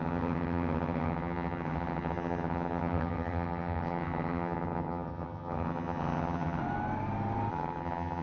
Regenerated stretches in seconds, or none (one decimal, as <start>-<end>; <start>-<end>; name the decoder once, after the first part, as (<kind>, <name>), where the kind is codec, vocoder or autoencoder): 0.0-6.6 (vocoder, HiFi-GAN); 7.5-8.2